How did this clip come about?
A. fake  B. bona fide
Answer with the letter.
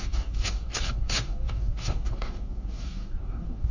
A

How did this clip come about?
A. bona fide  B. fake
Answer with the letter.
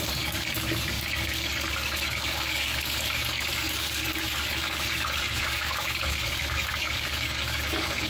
B